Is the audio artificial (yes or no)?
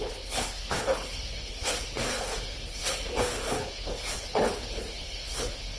yes